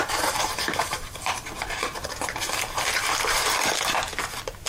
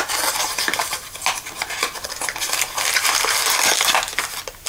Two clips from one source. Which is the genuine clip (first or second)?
second